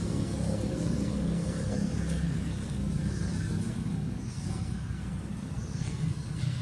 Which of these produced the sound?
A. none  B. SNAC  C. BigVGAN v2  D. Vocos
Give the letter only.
B